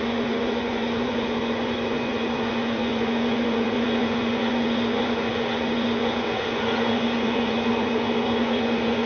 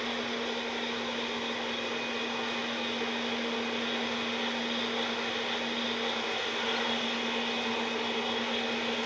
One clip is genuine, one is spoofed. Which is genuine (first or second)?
second